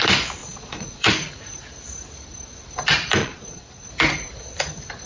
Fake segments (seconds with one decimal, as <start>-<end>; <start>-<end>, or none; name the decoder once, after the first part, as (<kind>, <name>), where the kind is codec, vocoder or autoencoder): 0.4-1.1 (vocoder, Vocos); 3.2-3.9